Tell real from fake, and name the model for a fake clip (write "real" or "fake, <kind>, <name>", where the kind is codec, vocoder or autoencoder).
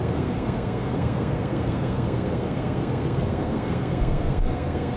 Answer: fake, codec, SNAC